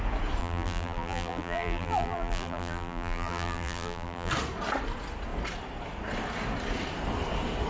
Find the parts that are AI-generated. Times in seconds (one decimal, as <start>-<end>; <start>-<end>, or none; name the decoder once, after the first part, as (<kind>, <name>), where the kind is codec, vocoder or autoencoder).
0.4-4.3 (vocoder, BigVGAN v2)